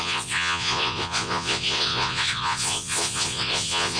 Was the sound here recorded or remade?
remade